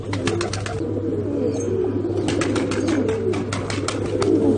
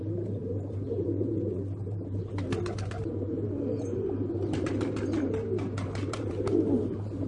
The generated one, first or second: second